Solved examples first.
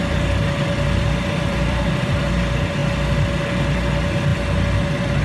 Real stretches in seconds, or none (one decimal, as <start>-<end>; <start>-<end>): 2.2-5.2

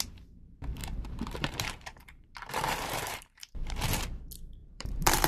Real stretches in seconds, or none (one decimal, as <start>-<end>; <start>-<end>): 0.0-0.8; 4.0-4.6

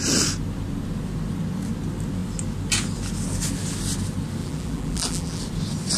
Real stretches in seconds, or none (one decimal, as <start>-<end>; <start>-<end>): 0.0-4.4; 5.4-6.0

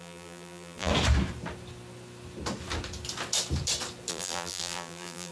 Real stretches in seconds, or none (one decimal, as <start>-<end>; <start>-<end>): 0.9-4.1

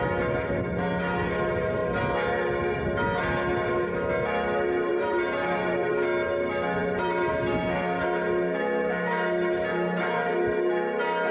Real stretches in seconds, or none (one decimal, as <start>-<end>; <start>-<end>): 0.0-4.9; 5.9-6.8; 7.3-9.7; 10.3-11.3

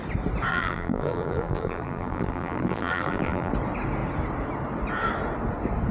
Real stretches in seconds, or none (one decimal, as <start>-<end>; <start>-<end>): 0.0-0.5; 3.5-5.9